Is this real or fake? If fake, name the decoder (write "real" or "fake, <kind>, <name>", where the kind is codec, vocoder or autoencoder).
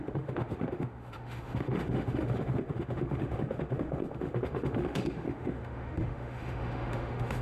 fake, autoencoder, DAC-VAE